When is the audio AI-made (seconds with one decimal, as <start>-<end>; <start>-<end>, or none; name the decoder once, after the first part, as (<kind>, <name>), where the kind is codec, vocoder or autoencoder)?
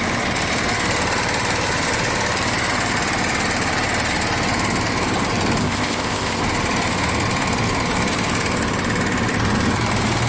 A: 5.6-6.4 (codec, ZipCodec)